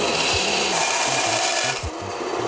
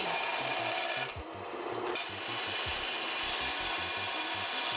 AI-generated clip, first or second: first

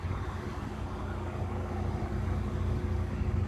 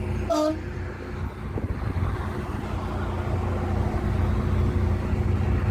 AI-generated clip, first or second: first